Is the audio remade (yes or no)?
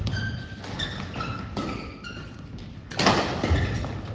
no